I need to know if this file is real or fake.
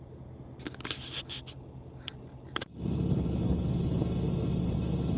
real